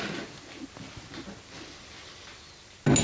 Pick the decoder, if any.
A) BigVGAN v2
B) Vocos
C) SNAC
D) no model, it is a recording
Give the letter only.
D